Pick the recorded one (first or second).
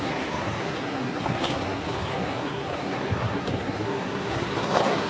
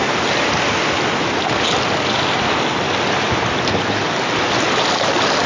second